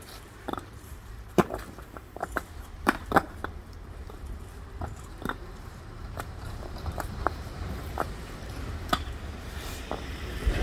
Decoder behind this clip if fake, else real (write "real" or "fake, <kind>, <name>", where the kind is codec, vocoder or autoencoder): fake, vocoder, BigVGAN v2